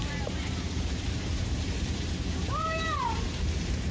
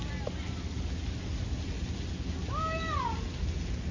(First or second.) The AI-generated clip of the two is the first